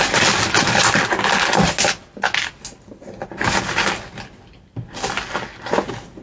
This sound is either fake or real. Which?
real